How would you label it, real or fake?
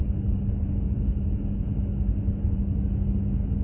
real